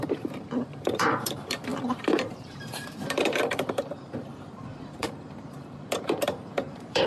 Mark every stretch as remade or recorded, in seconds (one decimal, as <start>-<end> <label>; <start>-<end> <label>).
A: 0.0-7.1 remade